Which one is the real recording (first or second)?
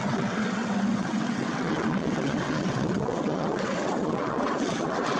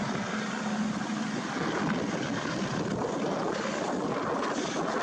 second